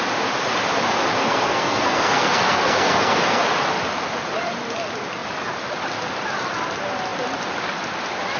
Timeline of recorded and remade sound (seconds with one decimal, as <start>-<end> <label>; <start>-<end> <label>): 0.0-1.2 recorded; 1.2-3.4 remade; 3.4-8.4 recorded